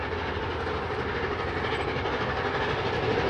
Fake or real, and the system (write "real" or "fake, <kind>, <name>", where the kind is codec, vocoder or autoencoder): real